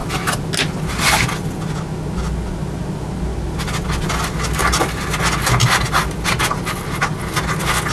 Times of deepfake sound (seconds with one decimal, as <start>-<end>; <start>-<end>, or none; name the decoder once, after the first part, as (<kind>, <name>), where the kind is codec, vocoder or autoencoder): none